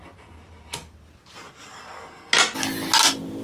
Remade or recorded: recorded